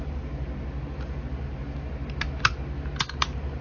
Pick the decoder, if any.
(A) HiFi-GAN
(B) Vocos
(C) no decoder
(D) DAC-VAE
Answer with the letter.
C